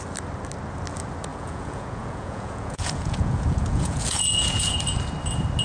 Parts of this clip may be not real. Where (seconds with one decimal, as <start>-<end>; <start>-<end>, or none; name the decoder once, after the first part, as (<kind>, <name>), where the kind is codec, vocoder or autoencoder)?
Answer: 1.3-4.7 (vocoder, Vocos)